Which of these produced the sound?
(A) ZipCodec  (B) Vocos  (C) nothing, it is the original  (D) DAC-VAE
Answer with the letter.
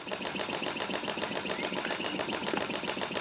C